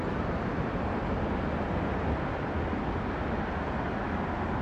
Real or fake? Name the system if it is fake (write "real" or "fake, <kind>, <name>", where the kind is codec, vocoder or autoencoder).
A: real